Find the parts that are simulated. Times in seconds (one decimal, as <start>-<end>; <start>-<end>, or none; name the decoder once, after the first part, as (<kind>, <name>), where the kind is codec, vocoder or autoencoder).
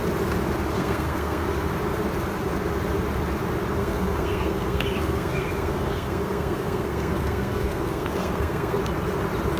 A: 0.7-1.7 (codec, SNAC); 3.8-8.8